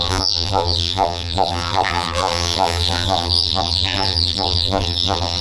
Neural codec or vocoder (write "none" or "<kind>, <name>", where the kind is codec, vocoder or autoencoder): vocoder, BigVGAN v2